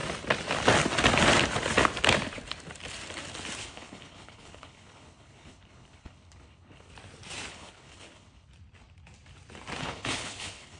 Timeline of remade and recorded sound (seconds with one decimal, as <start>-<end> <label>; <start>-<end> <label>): 0.0-3.6 recorded; 3.6-6.9 remade; 6.9-7.5 recorded; 7.5-8.5 remade; 8.5-9.8 recorded; 9.8-10.8 remade